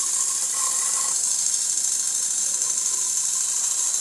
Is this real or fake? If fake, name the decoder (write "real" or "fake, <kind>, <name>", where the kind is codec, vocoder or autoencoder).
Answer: real